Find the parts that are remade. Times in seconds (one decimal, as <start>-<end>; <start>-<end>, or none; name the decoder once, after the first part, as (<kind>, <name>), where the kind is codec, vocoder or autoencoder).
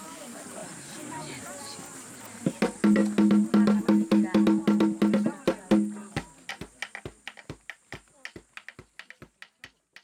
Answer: 0.6-1.3 (vocoder, BigVGAN v2)